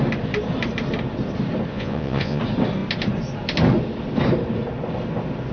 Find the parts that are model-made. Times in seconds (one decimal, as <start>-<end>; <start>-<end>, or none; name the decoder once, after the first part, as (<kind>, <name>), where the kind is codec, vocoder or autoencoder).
1.7-2.4 (vocoder, Vocos)